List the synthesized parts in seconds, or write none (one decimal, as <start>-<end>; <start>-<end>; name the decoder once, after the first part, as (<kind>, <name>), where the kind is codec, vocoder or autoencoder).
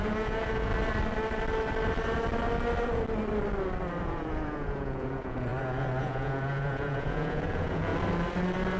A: 0.0-0.7 (vocoder, Vocos); 4.0-5.5; 6.0-7.9